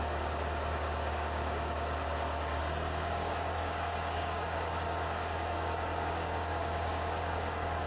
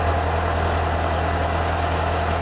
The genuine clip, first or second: second